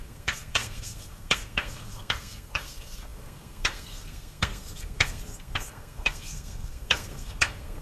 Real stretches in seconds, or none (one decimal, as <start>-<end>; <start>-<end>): none